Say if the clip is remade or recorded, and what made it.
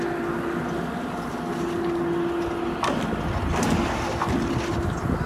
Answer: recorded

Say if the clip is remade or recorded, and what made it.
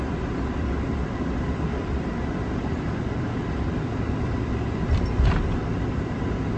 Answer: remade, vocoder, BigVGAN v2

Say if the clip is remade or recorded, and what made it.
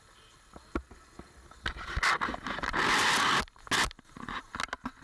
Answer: recorded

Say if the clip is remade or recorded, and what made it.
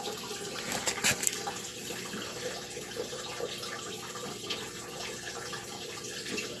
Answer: remade, vocoder, BigVGAN v2